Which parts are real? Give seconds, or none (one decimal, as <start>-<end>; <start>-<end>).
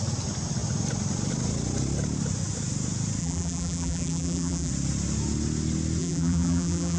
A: 0.0-3.2; 4.7-6.0